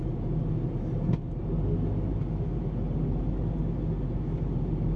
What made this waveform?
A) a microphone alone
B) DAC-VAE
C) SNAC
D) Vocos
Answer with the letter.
A